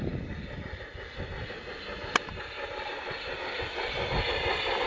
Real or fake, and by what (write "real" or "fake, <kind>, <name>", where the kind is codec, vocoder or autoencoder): real